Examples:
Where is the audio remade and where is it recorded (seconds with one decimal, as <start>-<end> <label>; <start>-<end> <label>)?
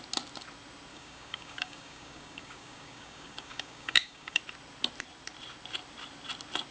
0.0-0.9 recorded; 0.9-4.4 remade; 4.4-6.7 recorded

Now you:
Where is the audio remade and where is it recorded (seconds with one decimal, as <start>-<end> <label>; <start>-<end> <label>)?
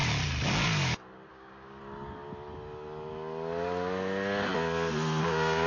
0.0-1.3 recorded; 1.3-1.8 remade; 1.8-5.2 recorded; 5.2-5.7 remade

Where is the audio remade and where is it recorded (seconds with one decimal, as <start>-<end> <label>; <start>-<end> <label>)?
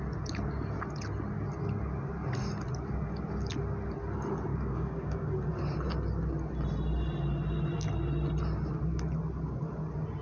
0.0-4.5 recorded; 4.5-5.3 remade; 5.3-10.2 recorded